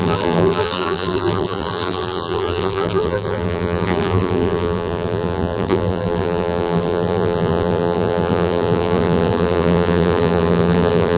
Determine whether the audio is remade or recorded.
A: remade